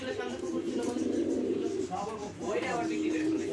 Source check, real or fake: real